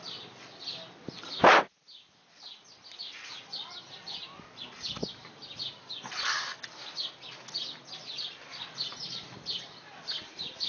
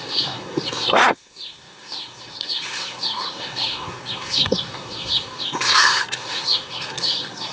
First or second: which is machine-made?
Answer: second